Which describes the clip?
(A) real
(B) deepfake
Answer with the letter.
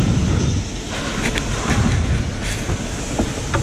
A